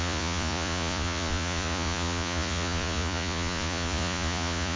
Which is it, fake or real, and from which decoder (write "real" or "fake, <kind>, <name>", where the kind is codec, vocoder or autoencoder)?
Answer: fake, vocoder, Vocos